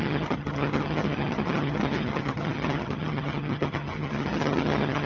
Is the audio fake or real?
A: fake